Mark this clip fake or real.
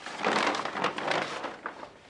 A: real